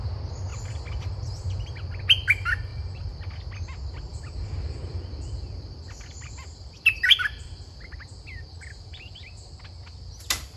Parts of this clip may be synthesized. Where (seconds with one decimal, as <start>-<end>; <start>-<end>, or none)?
0.5-2.0; 2.7-3.3; 4.1-9.3